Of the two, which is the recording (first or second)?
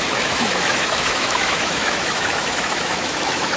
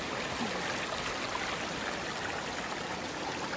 second